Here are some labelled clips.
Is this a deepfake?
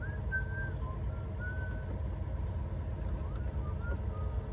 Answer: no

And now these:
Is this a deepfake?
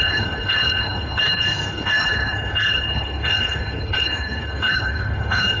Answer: yes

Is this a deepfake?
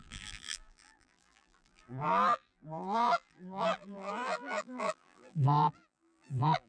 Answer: yes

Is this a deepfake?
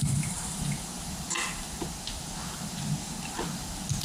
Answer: no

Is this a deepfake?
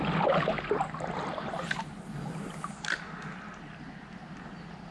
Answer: no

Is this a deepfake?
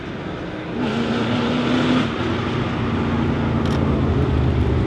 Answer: no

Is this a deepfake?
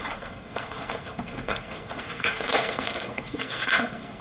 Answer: yes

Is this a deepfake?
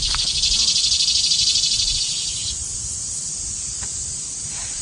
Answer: no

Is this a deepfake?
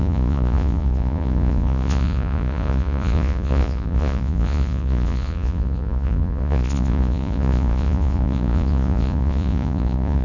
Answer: yes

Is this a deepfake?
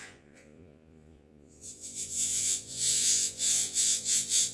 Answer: yes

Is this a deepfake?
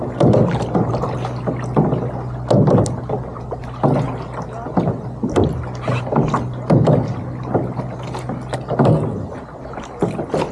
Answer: no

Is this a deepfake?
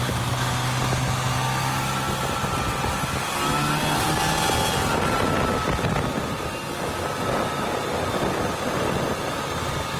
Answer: no